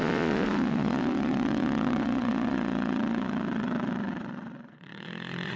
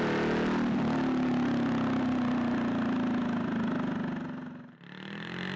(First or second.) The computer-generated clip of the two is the first